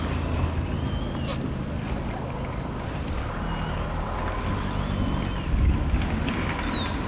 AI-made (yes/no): no